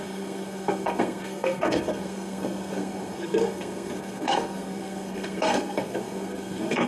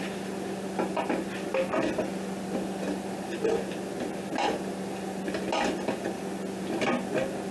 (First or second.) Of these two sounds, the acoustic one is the second